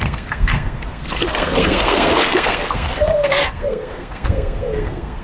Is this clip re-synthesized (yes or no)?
yes